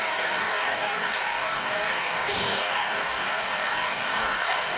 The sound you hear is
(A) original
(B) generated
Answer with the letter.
B